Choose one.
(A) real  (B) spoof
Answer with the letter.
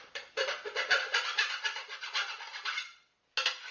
A